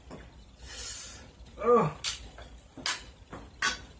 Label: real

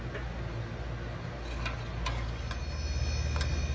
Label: real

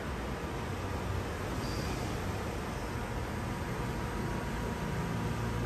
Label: real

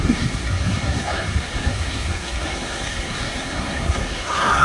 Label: fake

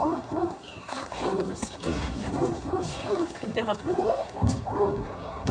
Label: fake